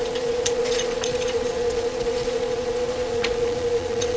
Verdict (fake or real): fake